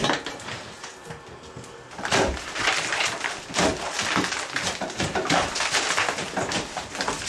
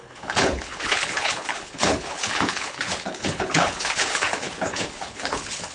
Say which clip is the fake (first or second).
second